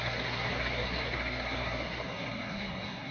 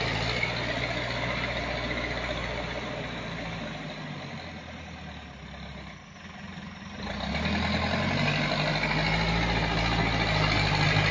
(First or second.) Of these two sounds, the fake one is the first